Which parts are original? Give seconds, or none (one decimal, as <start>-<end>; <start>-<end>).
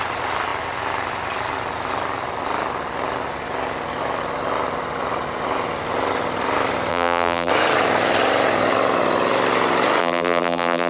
0.0-6.9; 7.5-10.0